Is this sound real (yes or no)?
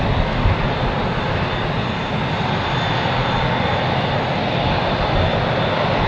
yes